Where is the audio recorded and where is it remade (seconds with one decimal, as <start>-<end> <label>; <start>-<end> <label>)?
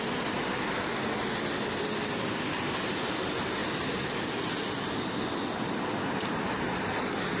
0.0-7.4 recorded